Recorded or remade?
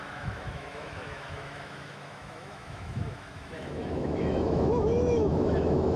remade